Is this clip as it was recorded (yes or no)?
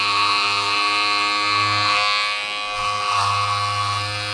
yes